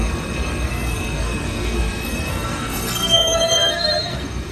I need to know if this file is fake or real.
fake